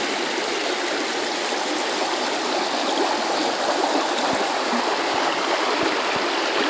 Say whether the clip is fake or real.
real